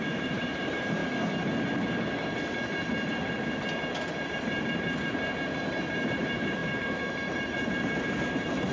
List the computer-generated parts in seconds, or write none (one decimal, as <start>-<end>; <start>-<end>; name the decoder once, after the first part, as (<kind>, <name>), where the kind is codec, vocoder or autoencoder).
0.0-1.0 (vocoder, BigVGAN v2); 4.3-8.7